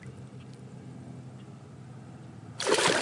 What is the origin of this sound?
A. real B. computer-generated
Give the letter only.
A